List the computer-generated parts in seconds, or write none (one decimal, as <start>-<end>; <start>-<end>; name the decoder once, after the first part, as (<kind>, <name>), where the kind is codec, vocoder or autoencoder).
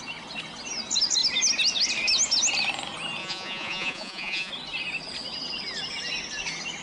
3.2-4.5 (vocoder, Vocos)